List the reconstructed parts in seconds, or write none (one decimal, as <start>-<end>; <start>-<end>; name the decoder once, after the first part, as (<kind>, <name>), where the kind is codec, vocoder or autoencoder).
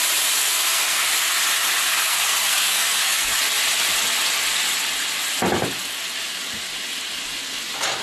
0.4-1.1 (codec, SNAC); 1.9-3.4